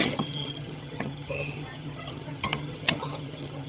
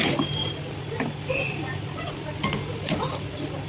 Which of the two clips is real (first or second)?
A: second